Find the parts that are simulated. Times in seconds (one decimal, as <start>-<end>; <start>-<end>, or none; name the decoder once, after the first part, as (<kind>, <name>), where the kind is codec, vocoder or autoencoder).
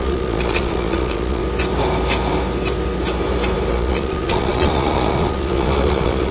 0.0-1.4 (vocoder, Vocos); 3.7-6.3